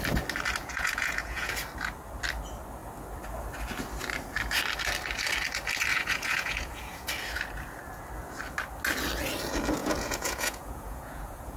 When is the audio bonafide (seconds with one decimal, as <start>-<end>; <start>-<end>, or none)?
0.0-0.6; 1.5-5.9; 7.1-9.8